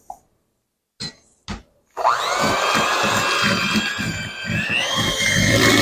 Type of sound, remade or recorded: recorded